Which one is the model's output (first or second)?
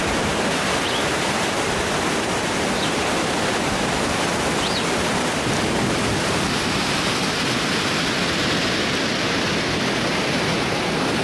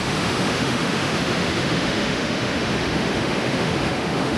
second